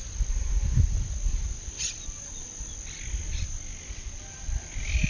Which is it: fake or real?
real